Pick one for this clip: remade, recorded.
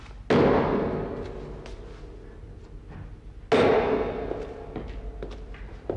recorded